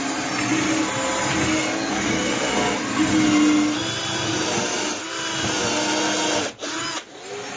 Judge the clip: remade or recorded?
recorded